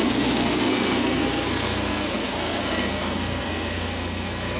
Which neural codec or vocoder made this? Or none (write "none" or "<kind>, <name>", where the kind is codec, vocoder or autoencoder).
codec, SNAC